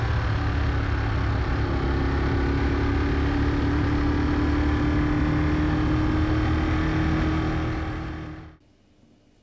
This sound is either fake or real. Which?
real